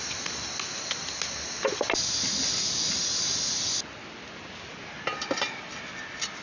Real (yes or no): yes